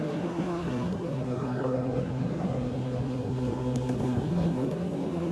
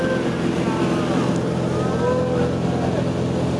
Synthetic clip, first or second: first